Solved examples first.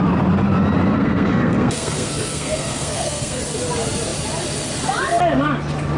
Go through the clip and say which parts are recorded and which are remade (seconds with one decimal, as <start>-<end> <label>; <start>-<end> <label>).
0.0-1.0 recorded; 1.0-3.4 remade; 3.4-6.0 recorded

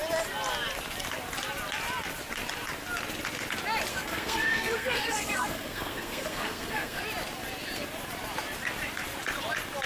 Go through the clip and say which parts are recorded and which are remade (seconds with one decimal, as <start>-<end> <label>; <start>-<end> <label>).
0.0-3.9 recorded; 3.9-7.0 remade; 7.0-9.9 recorded

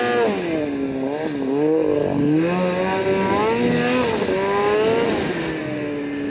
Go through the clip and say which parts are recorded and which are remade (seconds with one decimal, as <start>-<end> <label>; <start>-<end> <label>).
0.0-6.3 recorded

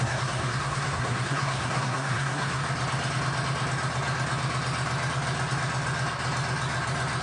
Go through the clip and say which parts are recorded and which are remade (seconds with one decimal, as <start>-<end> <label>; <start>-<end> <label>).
0.0-2.6 remade; 2.6-7.2 recorded

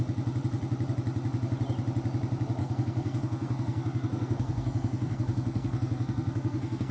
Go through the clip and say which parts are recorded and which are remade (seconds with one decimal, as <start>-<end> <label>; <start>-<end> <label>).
0.0-2.6 recorded; 2.6-6.9 remade

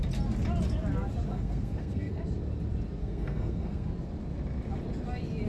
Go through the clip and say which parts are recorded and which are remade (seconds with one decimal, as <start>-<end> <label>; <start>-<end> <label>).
0.0-1.3 recorded; 1.3-2.2 remade; 2.2-3.0 recorded; 3.0-3.9 remade; 3.9-5.5 recorded